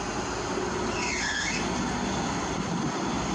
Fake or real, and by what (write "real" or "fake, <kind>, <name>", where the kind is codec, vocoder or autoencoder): real